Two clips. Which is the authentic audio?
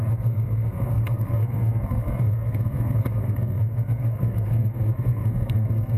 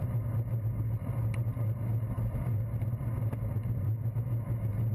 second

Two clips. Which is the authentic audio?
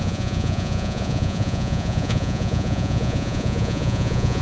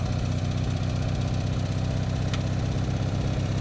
second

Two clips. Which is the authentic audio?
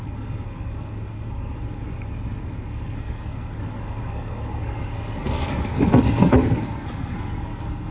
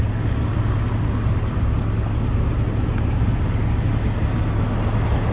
second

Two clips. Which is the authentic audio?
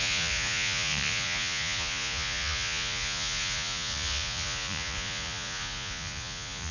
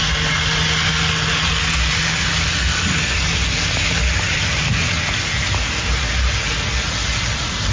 second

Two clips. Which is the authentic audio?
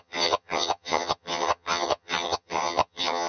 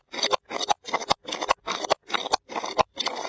second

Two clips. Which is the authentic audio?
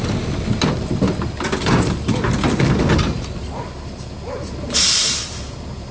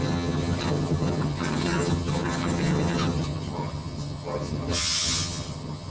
first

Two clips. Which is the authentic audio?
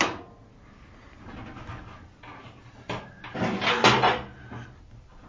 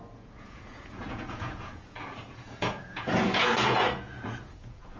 first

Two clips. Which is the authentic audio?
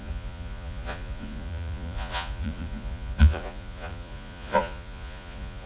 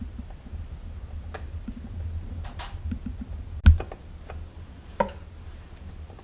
second